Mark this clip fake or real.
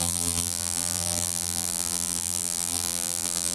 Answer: fake